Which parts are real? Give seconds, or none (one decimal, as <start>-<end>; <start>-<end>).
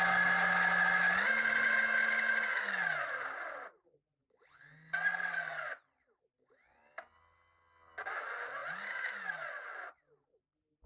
0.0-8.6; 9.5-10.9